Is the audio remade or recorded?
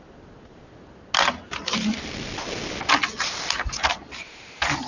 recorded